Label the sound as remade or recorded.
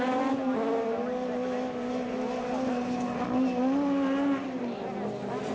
recorded